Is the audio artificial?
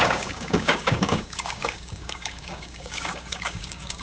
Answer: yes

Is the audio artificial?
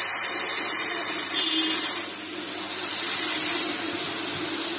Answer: no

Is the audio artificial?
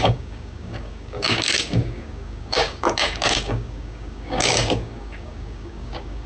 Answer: yes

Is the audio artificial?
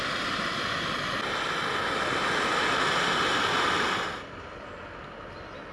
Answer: no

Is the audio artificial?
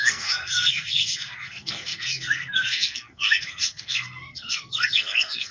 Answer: yes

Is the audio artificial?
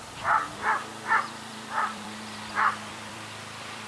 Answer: yes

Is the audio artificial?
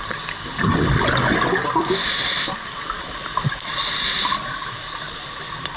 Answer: no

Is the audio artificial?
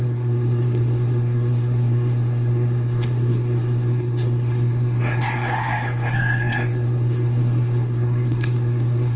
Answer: yes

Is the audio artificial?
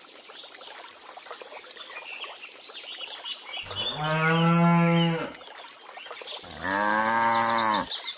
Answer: no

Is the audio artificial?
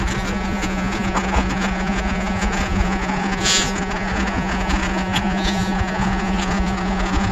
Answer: yes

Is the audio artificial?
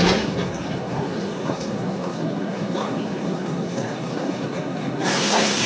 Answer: yes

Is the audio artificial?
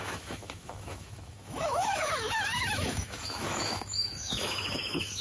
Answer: yes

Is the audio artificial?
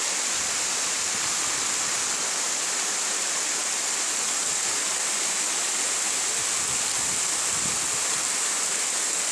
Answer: yes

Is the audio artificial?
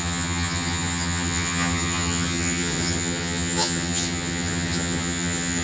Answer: yes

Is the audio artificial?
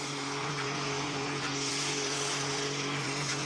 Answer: yes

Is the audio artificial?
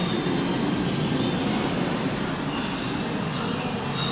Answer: no